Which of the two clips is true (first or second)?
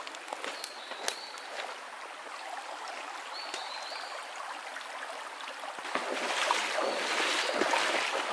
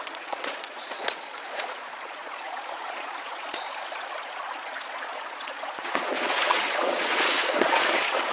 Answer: first